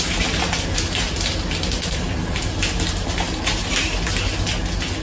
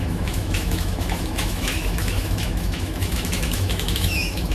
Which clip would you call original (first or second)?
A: first